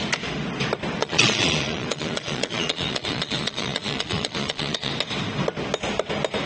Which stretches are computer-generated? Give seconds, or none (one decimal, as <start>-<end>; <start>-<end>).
1.0-4.9